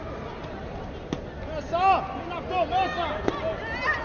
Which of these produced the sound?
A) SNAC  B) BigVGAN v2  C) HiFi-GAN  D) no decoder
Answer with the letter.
D